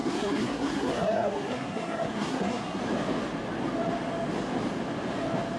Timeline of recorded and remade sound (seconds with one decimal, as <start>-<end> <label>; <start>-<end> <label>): 0.0-2.8 remade; 2.8-5.6 recorded